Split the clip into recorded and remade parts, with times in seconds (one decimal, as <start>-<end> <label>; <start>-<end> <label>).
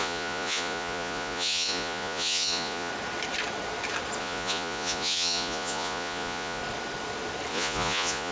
0.0-2.9 remade; 2.9-4.2 recorded; 4.2-6.6 remade; 6.6-7.5 recorded; 7.5-8.3 remade